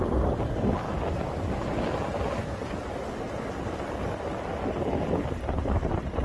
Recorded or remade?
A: recorded